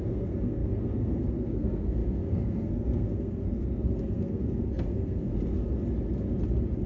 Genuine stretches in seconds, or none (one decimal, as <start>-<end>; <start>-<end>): 5.3-6.9